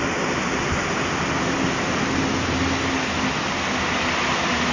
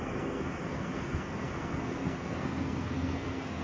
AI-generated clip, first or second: second